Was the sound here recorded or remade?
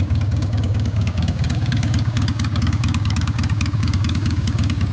remade